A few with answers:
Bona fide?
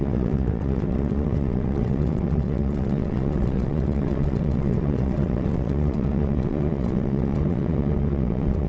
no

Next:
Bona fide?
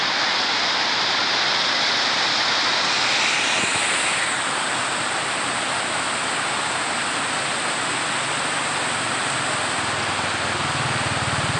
yes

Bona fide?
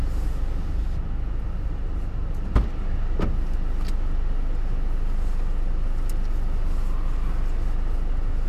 yes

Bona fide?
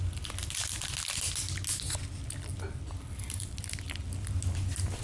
yes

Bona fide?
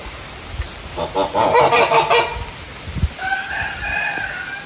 yes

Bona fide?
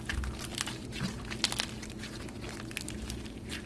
yes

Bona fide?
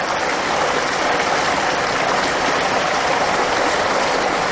no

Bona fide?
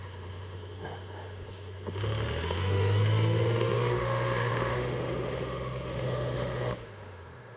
no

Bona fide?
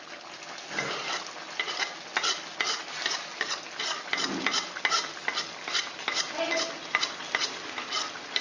yes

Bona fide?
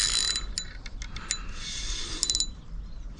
yes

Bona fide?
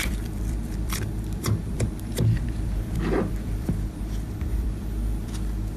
no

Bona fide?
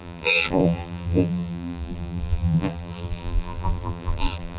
no